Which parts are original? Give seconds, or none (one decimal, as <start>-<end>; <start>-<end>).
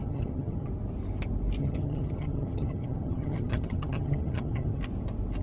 0.7-1.6; 4.8-5.4